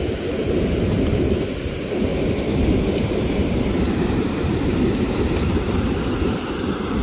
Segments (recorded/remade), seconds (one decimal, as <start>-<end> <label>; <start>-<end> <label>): 0.0-7.0 remade